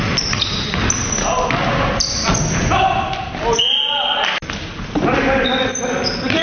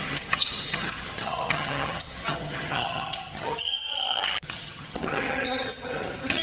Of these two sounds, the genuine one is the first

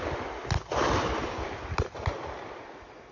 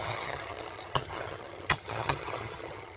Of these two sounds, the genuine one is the first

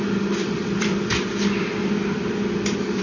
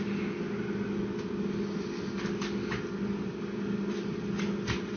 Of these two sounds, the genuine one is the second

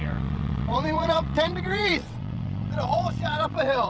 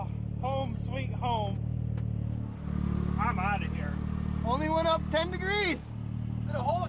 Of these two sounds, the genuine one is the second